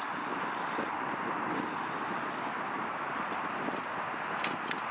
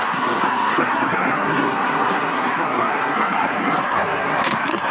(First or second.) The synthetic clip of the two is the second